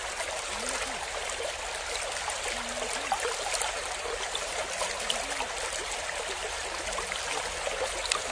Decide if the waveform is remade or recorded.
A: recorded